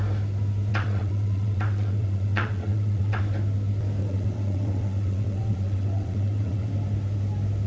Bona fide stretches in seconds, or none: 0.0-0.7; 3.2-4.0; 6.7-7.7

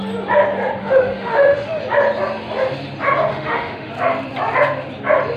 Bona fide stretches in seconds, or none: 0.0-0.8; 1.8-3.3; 3.9-5.4